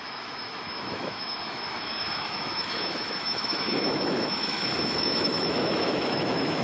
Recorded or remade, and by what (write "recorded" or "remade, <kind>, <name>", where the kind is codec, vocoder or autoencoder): remade, autoencoder, DAC-VAE